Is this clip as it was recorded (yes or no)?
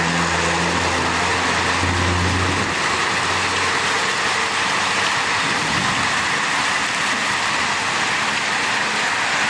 yes